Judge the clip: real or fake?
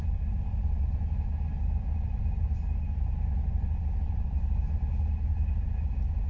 real